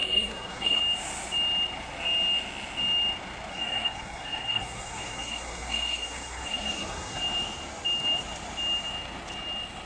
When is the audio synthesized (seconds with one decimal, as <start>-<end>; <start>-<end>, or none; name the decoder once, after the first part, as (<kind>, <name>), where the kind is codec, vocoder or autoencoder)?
0.0-0.8 (codec, SNAC); 3.5-7.2